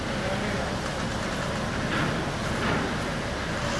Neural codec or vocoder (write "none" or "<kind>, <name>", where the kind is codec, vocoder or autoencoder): none